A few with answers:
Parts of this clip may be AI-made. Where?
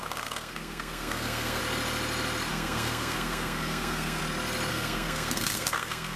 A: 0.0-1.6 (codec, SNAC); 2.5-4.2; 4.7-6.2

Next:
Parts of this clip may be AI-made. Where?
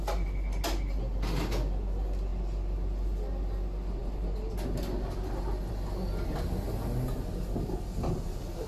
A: none